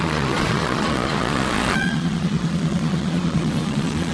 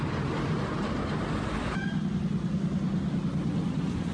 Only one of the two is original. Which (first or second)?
second